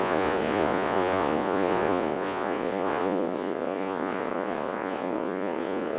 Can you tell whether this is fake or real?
fake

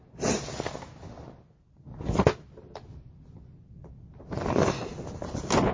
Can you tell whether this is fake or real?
real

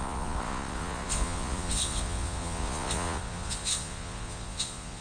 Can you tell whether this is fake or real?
fake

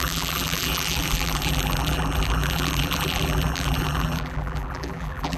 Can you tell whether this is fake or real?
fake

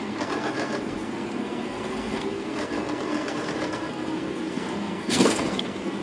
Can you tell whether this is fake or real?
fake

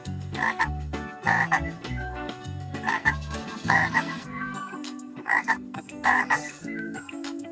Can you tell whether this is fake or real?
fake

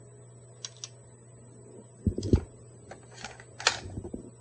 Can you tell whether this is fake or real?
real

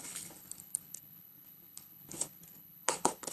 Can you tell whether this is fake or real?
fake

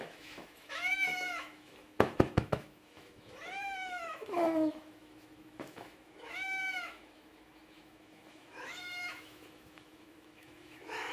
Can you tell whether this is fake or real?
fake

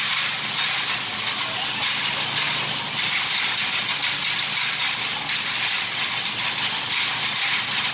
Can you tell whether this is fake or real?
real